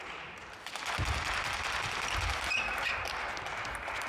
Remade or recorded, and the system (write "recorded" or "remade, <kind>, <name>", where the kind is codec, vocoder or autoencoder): recorded